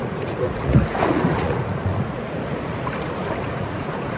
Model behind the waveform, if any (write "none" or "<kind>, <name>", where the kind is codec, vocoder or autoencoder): vocoder, Vocos